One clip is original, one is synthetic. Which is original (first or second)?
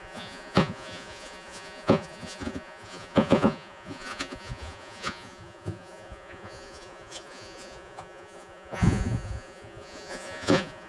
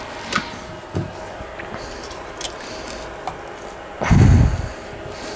second